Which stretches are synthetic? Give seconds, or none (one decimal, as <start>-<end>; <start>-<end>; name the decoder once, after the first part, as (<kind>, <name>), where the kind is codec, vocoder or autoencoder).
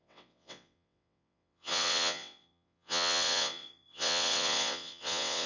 0.0-5.5 (vocoder, WaveNeXt)